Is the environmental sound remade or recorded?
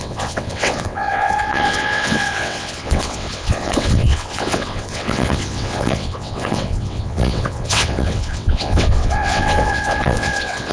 remade